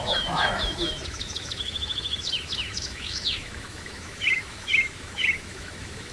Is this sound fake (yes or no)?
yes